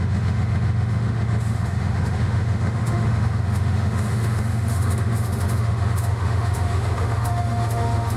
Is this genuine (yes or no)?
no